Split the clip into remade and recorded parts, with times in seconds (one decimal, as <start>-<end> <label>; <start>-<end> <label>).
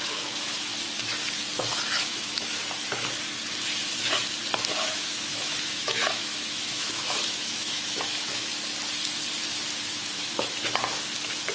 0.0-0.7 remade; 0.7-2.0 recorded; 2.0-2.6 remade; 2.6-4.8 recorded; 4.8-8.5 remade; 8.5-9.8 recorded; 9.8-10.6 remade; 10.6-11.5 recorded